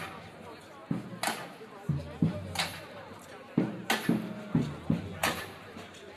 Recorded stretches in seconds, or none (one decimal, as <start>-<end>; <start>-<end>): 0.0-2.7; 3.5-5.2